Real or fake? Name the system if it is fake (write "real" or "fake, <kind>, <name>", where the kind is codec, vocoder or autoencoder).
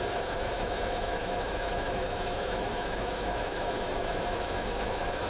fake, autoencoder, DAC-VAE